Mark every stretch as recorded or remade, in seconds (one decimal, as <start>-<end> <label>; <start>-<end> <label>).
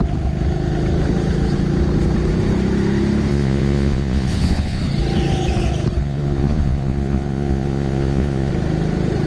0.0-3.3 recorded; 3.3-4.8 remade; 4.8-6.0 recorded; 6.0-8.5 remade; 8.5-9.3 recorded